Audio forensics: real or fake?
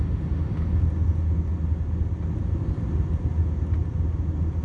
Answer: real